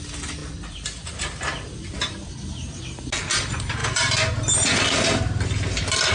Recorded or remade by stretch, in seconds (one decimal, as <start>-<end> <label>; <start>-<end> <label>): 0.0-0.4 recorded; 0.4-2.8 remade; 2.8-6.1 recorded